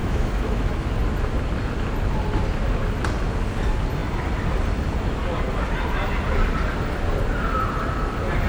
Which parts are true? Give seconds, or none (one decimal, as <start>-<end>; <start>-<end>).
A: 0.7-8.5

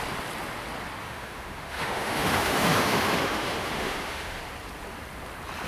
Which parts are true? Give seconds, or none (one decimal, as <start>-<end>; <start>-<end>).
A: 0.0-1.0; 4.4-5.7

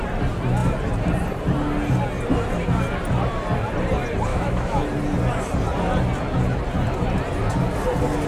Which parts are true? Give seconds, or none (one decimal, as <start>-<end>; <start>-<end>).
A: 0.0-4.3; 4.8-8.3

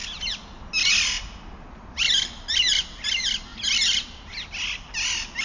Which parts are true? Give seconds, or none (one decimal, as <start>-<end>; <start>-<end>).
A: 0.0-5.4

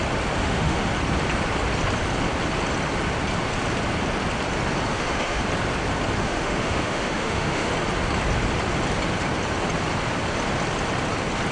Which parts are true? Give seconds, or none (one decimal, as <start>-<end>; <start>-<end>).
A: 0.0-0.4; 0.9-4.9; 5.4-6.2; 7.7-11.5

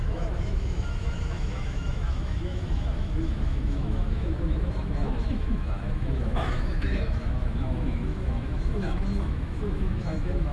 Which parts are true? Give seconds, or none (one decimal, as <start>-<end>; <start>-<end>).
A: none

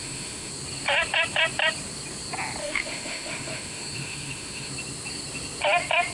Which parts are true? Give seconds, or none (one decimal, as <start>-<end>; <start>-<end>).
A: 0.5-2.6; 4.7-6.1

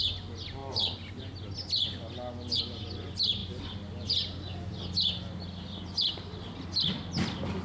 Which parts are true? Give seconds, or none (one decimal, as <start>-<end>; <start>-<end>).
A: 0.0-7.6